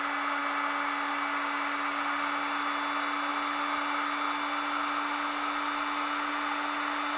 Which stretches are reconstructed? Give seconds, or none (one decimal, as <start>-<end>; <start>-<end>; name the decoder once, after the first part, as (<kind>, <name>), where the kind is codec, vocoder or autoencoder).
none